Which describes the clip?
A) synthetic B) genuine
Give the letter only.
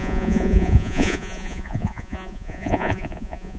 A